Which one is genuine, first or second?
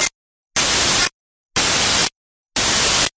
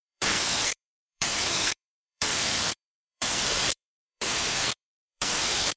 first